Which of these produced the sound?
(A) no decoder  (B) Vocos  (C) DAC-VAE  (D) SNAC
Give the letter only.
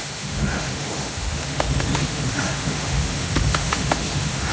C